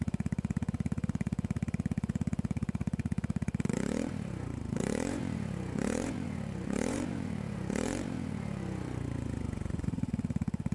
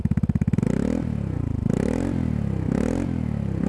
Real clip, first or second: second